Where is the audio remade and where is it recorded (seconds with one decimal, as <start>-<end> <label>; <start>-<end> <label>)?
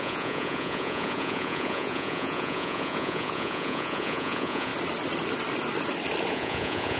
0.0-4.7 remade; 4.7-6.3 recorded; 6.3-7.0 remade